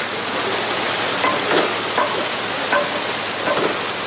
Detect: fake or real real